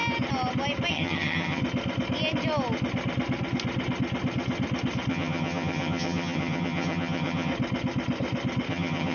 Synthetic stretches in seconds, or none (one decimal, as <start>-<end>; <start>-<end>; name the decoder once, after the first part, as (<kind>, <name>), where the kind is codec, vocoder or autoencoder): 0.9-1.6 (vocoder, HiFi-GAN); 5.1-7.5; 8.7-9.1